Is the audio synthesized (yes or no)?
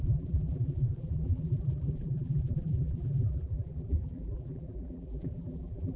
yes